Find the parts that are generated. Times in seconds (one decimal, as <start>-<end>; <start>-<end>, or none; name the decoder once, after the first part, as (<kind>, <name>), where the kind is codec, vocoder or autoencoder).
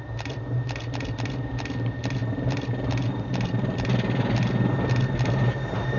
none